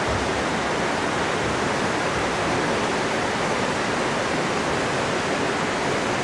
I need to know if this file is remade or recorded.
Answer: recorded